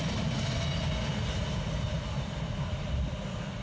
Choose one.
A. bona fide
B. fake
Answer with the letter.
A